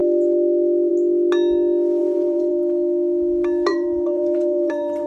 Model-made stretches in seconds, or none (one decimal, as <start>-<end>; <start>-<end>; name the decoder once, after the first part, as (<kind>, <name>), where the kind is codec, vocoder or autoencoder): 2.0-2.5 (vocoder, BigVGAN v2); 3.7-5.1